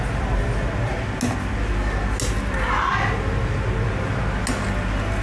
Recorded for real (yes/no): yes